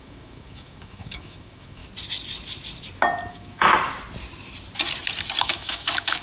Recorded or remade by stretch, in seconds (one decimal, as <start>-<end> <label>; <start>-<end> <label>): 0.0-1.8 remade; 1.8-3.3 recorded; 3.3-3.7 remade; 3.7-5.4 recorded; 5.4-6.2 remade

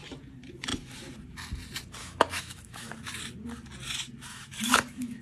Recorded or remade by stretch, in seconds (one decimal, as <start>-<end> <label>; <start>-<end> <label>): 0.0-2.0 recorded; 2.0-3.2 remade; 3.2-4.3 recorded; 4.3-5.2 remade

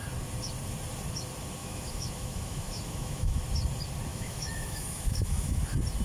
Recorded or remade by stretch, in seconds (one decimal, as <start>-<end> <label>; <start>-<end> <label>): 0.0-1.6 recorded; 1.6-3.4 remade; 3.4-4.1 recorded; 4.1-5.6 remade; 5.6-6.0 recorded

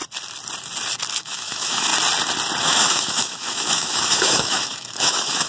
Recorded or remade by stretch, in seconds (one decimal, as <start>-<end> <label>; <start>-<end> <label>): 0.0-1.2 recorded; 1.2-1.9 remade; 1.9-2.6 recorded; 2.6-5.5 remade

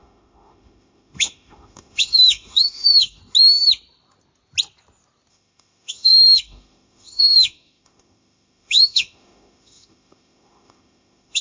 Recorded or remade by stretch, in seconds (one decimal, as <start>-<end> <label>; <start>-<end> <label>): 0.0-3.2 remade; 3.2-5.3 recorded; 5.3-11.4 remade

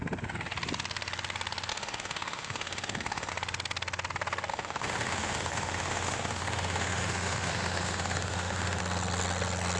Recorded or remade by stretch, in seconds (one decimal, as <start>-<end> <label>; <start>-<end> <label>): 0.0-1.7 recorded; 1.7-3.3 remade; 3.3-4.5 recorded; 4.5-8.8 remade; 8.8-9.8 recorded